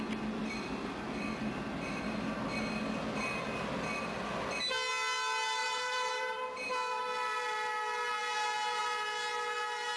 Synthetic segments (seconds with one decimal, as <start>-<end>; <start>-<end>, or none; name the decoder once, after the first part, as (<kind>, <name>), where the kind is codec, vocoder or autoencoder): 5.6-7.0 (vocoder, BigVGAN v2)